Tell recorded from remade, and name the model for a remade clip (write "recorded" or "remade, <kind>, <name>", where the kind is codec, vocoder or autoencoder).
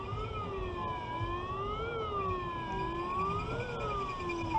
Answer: recorded